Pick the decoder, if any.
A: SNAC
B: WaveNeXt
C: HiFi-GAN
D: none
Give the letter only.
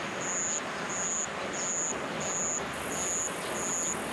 D